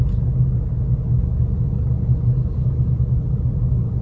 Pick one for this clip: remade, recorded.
recorded